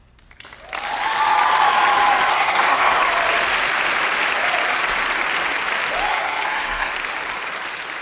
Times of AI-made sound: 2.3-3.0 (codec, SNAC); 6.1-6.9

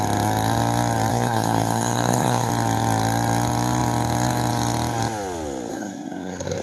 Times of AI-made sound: 1.1-2.5 (codec, SNAC); 5.7-6.6

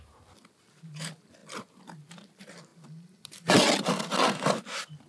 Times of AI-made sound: none

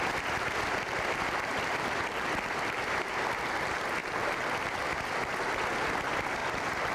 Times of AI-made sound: 1.5-3.1 (vocoder, BigVGAN v2); 4.0-4.9

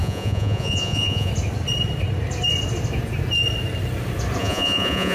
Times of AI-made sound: 0.0-1.3 (vocoder, Vocos); 4.4-5.1

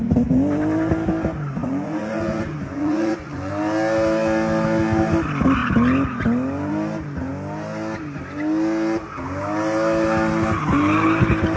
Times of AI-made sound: 1.6-3.5 (vocoder, Vocos)

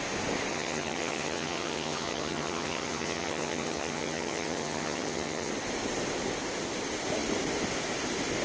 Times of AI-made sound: 0.5-5.5 (vocoder, HiFi-GAN)